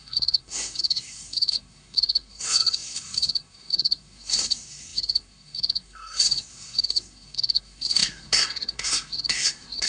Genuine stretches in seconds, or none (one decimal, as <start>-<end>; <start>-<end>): none